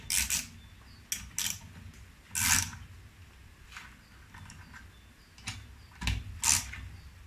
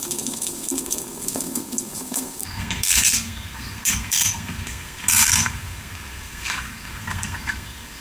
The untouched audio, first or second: first